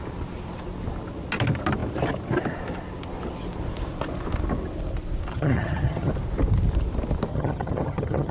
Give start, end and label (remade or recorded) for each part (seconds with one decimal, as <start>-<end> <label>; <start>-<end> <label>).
0.0-5.3 recorded; 5.3-6.1 remade; 6.1-7.3 recorded; 7.3-8.3 remade